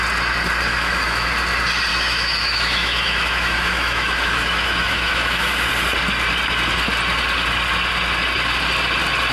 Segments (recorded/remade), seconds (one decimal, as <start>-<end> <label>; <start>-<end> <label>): 0.0-0.7 recorded; 0.7-1.3 remade; 1.3-1.9 recorded; 1.9-5.7 remade; 5.7-9.3 recorded